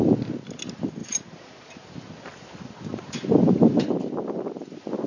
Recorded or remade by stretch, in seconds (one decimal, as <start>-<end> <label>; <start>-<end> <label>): 0.0-1.0 recorded; 1.0-4.1 remade; 4.1-5.1 recorded